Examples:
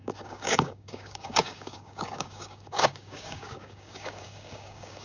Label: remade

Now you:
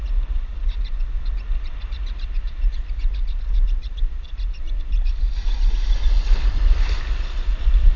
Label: recorded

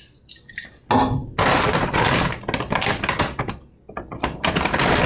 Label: recorded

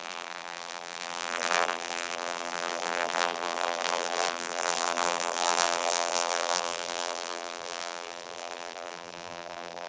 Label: remade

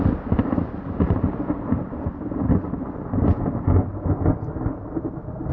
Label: recorded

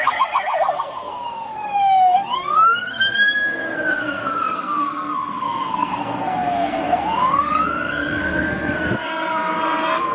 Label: remade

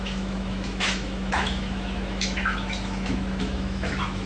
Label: remade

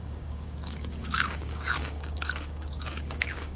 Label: remade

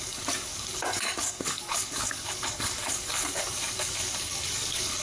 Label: remade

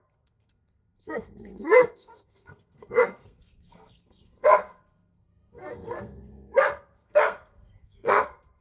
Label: remade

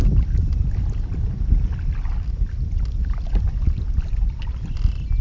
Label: recorded